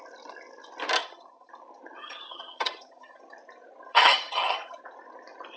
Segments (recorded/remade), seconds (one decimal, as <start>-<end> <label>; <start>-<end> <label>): 0.0-1.0 recorded; 1.0-1.5 remade; 1.5-2.0 recorded; 2.0-3.2 remade; 3.2-3.9 recorded; 3.9-4.8 remade; 4.8-5.6 recorded